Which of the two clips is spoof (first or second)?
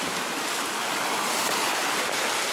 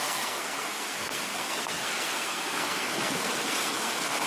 second